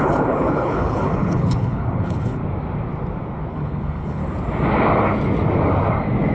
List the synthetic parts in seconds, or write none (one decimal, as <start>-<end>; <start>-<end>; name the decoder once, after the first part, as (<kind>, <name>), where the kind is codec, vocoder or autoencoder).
0.0-2.4 (codec, HILCodec); 3.5-4.2